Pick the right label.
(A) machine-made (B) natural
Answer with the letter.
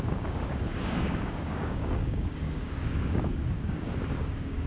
A